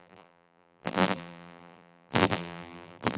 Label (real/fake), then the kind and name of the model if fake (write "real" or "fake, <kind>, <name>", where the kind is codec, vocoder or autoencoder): fake, vocoder, BigVGAN v2